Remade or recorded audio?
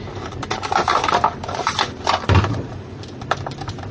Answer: remade